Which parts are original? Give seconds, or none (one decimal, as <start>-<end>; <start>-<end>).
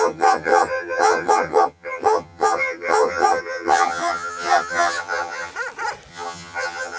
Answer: 5.5-6.1